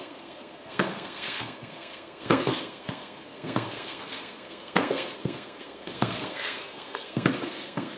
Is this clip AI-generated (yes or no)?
yes